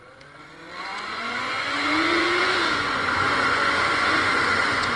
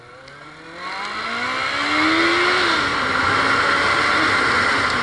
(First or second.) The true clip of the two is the second